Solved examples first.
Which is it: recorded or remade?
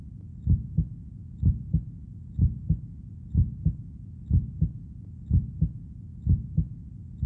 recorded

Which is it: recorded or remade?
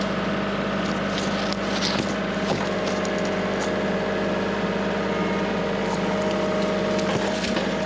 recorded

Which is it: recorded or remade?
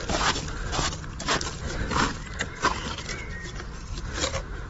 remade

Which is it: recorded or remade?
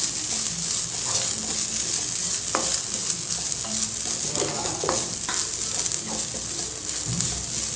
recorded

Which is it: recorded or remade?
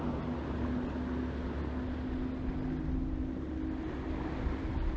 recorded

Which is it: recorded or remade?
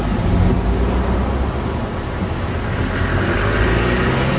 recorded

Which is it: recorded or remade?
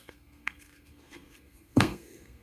remade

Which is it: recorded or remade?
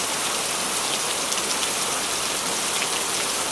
remade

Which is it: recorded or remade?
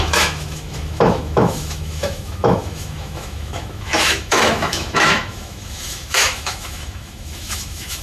remade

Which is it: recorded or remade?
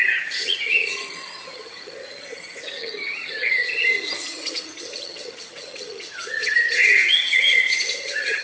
remade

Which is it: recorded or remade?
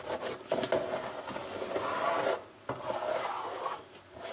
recorded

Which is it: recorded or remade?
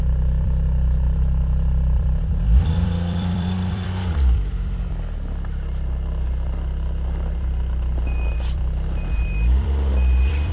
remade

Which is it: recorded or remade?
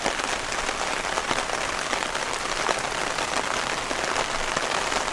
recorded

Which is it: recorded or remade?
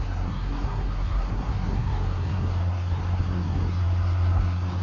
remade